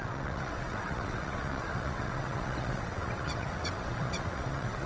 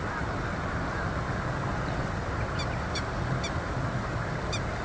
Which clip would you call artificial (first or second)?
first